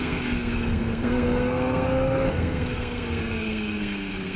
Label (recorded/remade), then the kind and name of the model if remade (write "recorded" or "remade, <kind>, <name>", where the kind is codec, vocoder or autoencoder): remade, codec, SNAC